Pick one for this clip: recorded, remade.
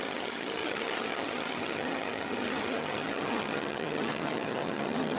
remade